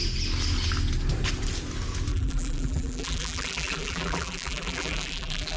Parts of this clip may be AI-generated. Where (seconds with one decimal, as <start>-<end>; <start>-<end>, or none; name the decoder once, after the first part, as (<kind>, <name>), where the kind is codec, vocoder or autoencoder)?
2.1-5.6 (vocoder, BigVGAN v2)